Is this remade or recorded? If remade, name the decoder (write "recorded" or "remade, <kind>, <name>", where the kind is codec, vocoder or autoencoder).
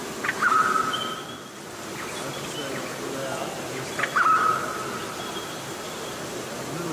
recorded